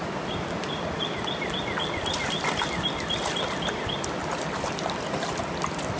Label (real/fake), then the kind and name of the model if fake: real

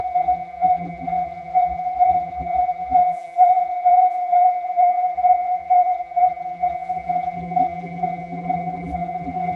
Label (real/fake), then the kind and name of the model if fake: fake, vocoder, BigVGAN v2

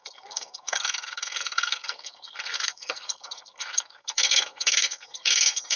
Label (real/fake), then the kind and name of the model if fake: fake, codec, SNAC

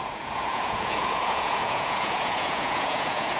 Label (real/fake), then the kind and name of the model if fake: fake, vocoder, Vocos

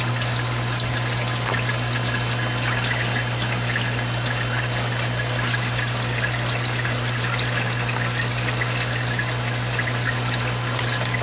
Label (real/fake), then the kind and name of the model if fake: real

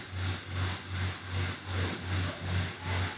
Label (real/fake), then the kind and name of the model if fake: real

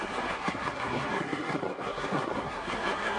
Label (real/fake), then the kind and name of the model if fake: fake, codec, SNAC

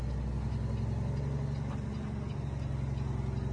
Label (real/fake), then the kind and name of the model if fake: real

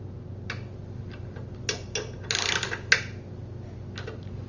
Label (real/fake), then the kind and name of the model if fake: real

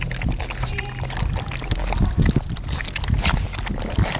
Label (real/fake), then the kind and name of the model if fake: real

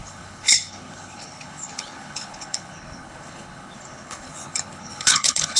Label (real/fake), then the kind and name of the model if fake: fake, codec, HILCodec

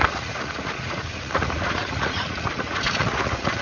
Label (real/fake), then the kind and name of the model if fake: fake, vocoder, Vocos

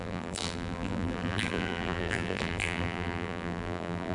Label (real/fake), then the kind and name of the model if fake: fake, vocoder, BigVGAN v2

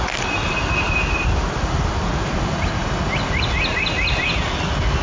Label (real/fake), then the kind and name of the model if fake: real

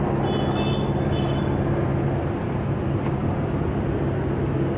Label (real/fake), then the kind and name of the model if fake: real